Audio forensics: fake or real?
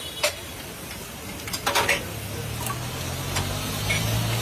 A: real